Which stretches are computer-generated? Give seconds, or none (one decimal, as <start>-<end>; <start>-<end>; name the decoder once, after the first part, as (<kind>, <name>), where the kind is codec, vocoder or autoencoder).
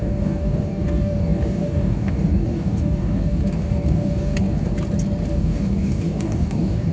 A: 0.0-4.7 (codec, DAC); 5.3-6.9